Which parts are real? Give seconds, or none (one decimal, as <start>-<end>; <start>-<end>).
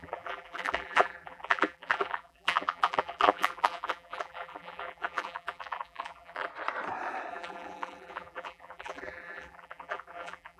6.5-7.3